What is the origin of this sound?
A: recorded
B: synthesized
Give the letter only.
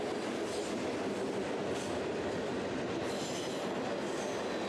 A